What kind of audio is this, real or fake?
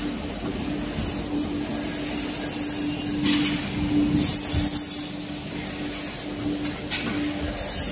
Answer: real